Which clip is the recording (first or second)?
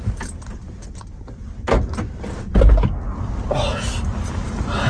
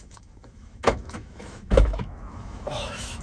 first